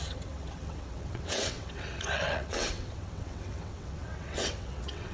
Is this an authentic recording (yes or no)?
no